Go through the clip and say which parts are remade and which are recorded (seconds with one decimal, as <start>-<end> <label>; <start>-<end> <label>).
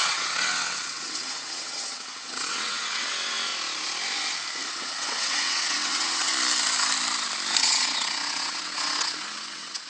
0.0-3.5 remade; 3.5-4.7 recorded; 4.7-6.3 remade; 6.3-7.6 recorded; 7.6-9.9 remade